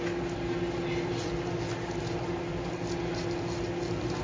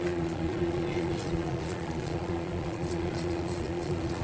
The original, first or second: first